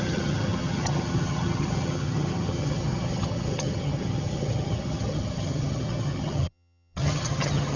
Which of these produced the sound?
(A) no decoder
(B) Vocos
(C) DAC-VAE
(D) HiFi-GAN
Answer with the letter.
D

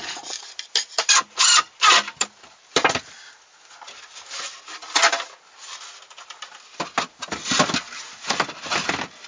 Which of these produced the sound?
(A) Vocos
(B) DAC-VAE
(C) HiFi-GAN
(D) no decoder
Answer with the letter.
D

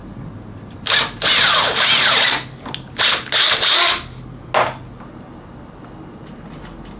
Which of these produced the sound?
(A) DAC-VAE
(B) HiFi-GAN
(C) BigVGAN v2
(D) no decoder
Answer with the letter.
D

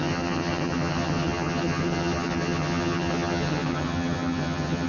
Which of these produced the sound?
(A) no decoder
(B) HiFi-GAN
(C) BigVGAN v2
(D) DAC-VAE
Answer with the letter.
B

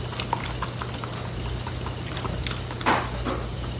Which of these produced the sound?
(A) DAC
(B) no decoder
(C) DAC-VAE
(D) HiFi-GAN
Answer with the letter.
B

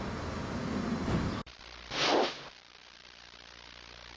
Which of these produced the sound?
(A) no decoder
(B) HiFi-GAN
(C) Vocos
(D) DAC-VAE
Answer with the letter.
A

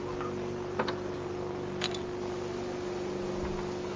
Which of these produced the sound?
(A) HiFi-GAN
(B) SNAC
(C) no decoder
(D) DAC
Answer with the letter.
C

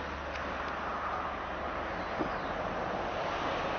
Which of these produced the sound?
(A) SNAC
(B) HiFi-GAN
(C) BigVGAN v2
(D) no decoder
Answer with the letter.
D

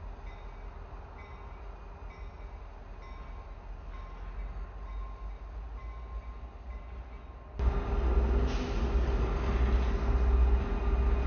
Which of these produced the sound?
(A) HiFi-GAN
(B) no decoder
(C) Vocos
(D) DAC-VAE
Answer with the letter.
B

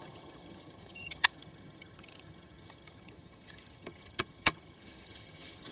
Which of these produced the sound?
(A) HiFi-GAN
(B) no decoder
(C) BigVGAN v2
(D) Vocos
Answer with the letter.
A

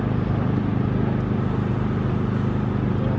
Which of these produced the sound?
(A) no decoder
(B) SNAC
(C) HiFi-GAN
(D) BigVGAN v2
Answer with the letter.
A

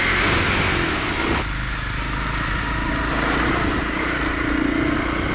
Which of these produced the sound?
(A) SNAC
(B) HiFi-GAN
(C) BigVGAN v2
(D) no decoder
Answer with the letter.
D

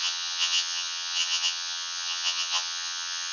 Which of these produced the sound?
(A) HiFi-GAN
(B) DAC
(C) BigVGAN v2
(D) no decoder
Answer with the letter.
A